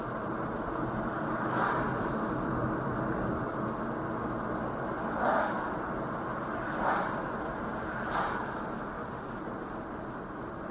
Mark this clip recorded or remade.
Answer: recorded